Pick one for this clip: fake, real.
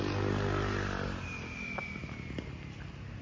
real